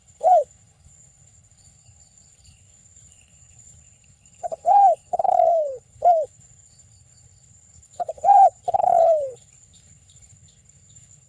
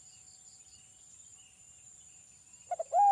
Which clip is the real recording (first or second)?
second